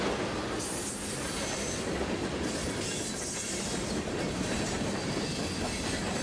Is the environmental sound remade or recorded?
recorded